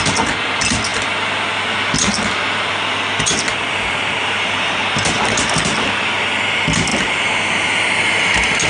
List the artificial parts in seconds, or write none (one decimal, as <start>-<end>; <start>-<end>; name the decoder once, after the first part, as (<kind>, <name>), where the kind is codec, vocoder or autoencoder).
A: 4.2-4.8 (vocoder, BigVGAN v2); 6.9-7.7